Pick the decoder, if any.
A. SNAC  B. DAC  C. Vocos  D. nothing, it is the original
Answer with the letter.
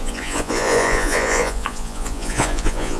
C